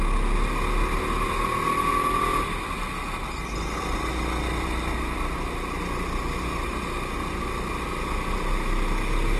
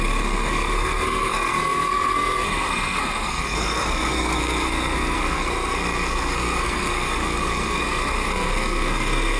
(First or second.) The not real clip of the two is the second